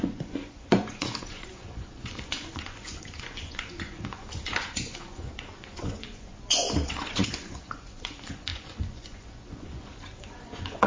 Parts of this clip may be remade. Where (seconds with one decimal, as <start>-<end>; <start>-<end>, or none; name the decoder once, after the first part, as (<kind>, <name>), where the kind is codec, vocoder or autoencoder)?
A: 0.0-10.9 (vocoder, Vocos)